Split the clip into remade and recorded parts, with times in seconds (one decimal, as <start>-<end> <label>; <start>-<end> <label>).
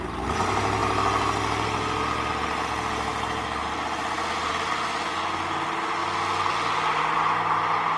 0.0-8.0 recorded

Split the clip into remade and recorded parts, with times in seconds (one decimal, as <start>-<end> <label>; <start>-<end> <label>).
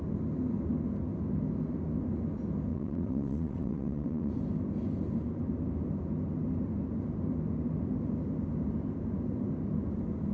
0.0-2.7 recorded; 2.7-4.3 remade; 4.3-10.3 recorded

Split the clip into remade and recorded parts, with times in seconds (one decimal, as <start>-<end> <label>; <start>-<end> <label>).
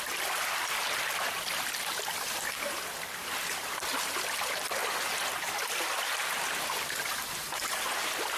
0.0-8.4 recorded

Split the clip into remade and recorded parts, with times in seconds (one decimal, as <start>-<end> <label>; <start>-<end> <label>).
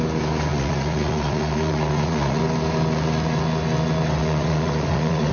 0.0-0.5 recorded; 0.5-2.4 remade; 2.4-4.2 recorded; 4.2-5.3 remade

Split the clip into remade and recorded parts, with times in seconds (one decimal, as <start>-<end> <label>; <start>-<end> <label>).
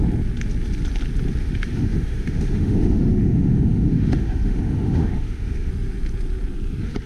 0.0-1.4 recorded; 1.4-5.7 remade; 5.7-7.1 recorded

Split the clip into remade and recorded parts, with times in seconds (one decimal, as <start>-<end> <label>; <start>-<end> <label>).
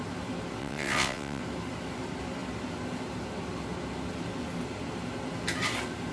0.0-0.6 recorded; 0.6-1.4 remade; 1.4-6.1 recorded